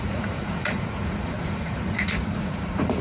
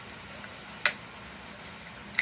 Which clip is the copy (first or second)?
first